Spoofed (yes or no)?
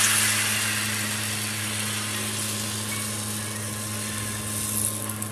no